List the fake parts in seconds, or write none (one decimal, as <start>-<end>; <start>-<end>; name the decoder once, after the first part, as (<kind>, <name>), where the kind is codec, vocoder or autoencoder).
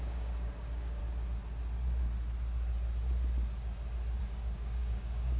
0.0-1.0 (codec, DAC); 4.2-5.4